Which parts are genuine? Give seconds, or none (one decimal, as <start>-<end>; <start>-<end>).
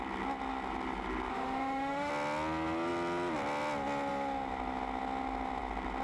0.0-1.3; 2.1-6.0